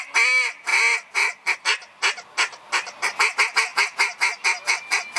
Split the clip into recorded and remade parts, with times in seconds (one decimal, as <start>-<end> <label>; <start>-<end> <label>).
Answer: 0.0-5.2 recorded